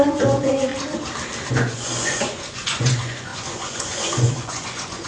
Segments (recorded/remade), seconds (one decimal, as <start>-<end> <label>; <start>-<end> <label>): 0.0-0.7 remade; 0.7-1.5 recorded; 1.5-5.1 remade